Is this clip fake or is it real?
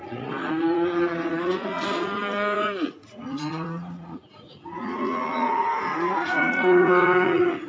fake